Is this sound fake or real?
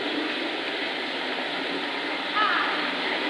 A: real